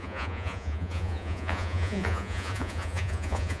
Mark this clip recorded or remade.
remade